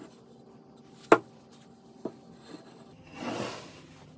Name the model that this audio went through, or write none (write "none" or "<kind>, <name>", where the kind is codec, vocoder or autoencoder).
none